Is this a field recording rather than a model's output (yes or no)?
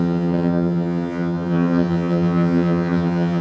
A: no